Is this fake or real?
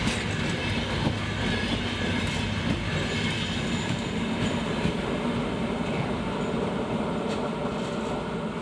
real